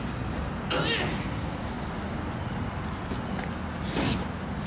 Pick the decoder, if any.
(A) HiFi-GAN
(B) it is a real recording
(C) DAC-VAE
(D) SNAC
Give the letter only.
B